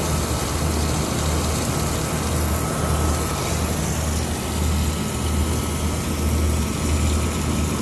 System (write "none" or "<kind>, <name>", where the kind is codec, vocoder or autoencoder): none